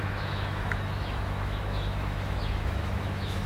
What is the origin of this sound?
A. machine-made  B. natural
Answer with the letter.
A